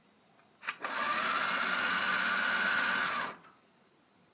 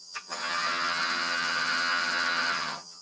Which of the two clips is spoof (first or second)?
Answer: second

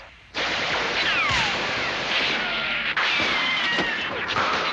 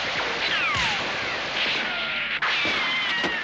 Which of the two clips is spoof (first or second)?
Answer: first